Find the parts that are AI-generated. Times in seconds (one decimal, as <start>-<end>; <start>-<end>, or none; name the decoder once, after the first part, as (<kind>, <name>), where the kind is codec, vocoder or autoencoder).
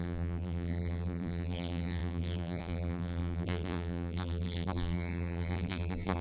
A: 0.0-6.2 (vocoder, BigVGAN v2)